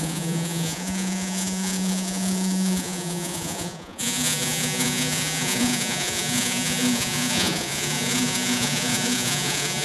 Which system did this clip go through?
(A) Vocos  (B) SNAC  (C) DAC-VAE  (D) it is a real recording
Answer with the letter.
A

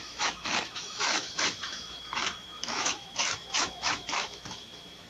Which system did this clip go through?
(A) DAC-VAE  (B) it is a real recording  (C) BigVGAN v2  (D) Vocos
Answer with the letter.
A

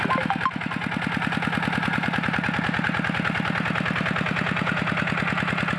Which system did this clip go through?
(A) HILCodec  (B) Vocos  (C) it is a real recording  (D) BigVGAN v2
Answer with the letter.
C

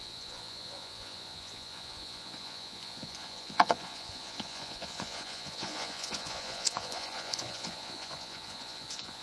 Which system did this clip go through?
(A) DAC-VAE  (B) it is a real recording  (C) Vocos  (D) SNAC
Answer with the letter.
C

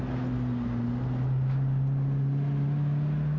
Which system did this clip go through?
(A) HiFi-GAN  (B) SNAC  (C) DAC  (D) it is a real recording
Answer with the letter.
D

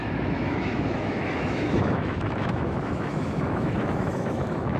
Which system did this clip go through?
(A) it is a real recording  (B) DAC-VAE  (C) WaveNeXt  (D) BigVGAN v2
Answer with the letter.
B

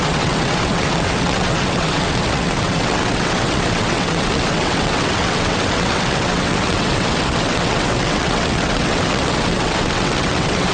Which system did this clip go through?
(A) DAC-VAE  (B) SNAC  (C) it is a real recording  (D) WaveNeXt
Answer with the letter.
D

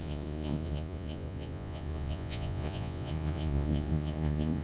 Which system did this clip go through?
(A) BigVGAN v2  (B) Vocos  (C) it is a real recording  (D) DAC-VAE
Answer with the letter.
B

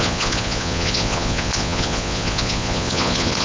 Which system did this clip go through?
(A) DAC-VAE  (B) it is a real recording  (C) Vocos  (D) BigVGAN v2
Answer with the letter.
C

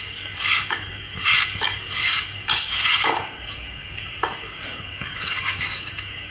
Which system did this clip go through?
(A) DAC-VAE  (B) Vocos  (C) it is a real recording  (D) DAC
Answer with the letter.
D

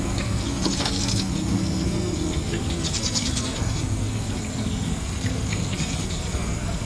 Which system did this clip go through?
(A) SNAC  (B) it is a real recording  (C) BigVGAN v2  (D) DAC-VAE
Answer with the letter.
A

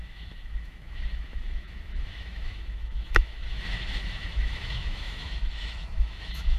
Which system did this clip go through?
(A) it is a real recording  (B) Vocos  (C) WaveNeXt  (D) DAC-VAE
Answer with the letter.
D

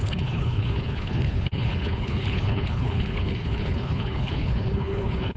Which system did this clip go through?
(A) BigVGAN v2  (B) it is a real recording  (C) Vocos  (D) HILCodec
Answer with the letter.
D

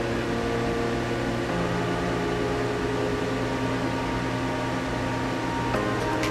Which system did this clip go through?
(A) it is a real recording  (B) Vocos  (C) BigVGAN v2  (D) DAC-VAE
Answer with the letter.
A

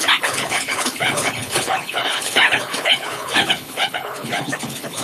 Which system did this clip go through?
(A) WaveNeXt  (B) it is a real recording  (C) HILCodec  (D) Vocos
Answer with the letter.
C